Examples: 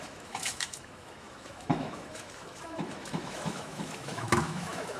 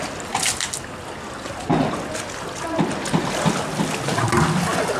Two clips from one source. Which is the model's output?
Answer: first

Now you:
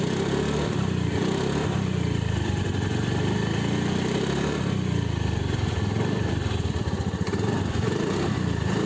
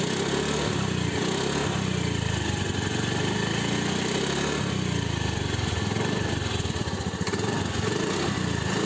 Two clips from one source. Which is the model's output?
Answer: first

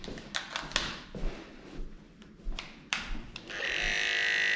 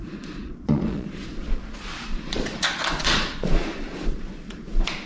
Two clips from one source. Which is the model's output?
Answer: second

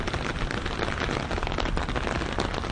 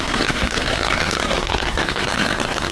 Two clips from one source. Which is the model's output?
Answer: second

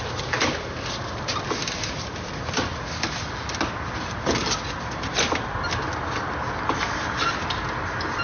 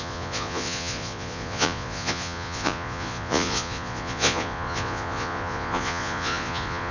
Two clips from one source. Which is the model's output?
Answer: second